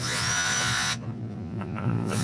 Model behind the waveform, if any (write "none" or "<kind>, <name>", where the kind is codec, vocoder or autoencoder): vocoder, Vocos